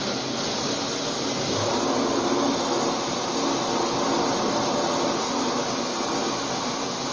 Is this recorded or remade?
recorded